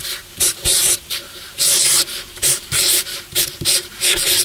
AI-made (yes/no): yes